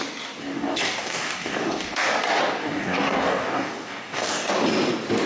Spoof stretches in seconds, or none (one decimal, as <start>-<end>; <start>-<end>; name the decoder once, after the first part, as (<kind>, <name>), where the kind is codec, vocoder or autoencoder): 0.4-2.1 (codec, DAC); 2.6-4.5